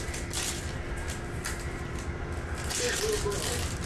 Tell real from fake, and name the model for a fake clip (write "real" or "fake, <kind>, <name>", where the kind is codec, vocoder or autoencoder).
real